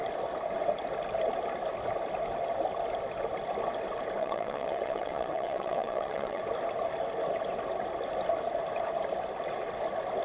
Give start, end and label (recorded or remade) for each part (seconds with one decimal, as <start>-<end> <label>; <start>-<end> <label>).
0.0-4.2 recorded; 4.2-6.4 remade; 6.4-10.2 recorded